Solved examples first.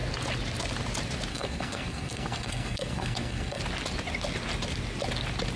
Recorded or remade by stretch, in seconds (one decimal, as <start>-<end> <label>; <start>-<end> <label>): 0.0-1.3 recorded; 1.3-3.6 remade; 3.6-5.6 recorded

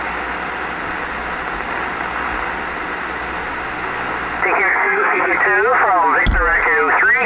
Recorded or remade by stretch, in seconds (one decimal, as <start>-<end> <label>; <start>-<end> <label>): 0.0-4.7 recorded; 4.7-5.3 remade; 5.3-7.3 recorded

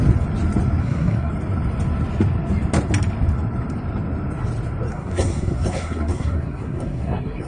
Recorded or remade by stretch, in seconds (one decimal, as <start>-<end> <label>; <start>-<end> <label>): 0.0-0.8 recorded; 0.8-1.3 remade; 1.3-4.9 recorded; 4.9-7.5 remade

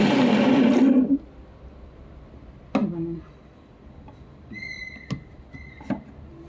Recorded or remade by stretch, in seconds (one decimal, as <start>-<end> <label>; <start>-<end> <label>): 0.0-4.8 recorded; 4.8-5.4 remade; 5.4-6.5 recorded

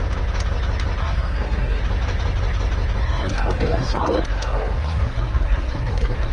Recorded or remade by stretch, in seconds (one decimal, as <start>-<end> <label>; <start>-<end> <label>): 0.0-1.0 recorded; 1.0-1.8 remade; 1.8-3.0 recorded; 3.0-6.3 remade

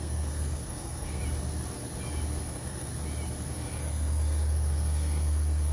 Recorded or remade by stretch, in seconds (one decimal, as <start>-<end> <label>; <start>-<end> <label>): 0.0-1.2 remade; 1.2-2.4 recorded; 2.4-2.9 remade; 2.9-3.5 recorded; 3.5-5.7 remade

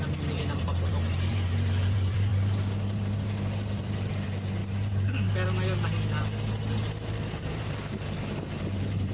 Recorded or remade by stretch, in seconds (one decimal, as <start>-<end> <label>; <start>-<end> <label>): 0.0-4.6 remade; 4.6-7.4 recorded; 7.4-9.1 remade